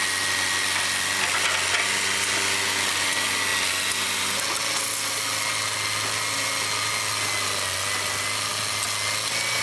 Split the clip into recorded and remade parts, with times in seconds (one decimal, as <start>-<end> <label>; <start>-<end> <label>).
0.0-9.6 recorded